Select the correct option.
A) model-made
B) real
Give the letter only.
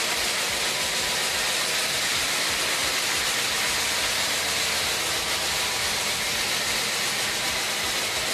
B